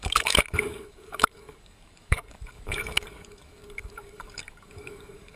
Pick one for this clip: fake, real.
fake